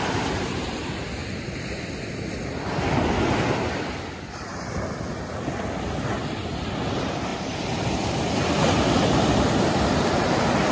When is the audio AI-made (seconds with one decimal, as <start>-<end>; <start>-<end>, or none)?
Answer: 7.3-10.7

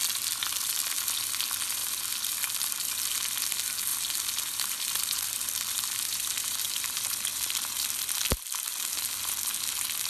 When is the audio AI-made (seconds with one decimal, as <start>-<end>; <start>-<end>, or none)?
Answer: 3.9-8.0

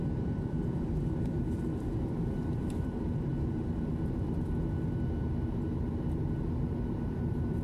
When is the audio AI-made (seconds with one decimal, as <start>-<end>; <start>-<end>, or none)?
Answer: 0.0-3.3; 6.9-7.6

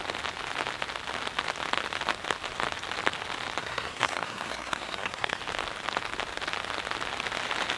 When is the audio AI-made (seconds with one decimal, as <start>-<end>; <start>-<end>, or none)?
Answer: 3.6-5.4

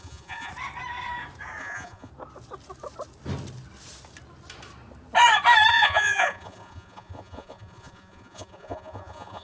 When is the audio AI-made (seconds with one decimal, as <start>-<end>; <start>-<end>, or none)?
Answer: 0.0-0.5; 1.6-2.1; 5.7-9.4

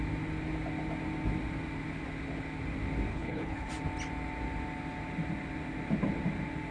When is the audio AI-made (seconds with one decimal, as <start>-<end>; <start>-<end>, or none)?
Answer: 3.1-3.7

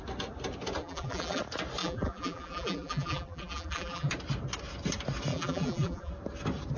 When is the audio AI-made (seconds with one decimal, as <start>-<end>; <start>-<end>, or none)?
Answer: 0.8-1.4; 1.8-4.1; 5.3-6.1